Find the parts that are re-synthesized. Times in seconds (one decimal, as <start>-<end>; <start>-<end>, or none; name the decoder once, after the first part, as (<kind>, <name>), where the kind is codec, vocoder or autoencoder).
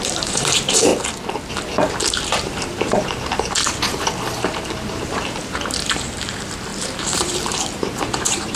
0.0-0.9 (vocoder, BigVGAN v2); 1.5-8.6